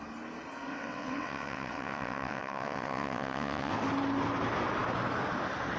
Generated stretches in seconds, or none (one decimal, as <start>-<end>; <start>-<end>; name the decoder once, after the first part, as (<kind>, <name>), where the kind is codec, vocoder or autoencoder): 0.7-3.7 (vocoder, WaveNeXt)